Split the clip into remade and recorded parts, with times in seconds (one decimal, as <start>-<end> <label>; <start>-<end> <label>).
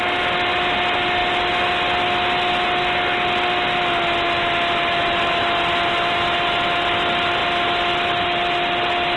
0.0-9.2 recorded